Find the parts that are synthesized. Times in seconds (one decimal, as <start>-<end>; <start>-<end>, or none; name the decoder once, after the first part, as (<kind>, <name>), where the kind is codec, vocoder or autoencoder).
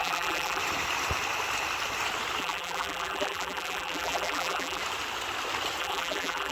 0.0-0.6 (vocoder, BigVGAN v2); 2.4-4.8; 5.8-6.5